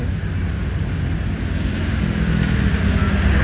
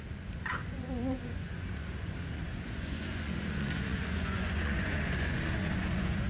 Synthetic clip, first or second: second